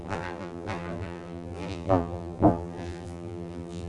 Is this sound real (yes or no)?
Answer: no